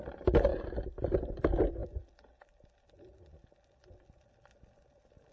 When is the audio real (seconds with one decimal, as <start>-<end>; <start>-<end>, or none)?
0.0-5.3